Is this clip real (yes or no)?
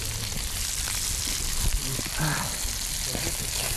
yes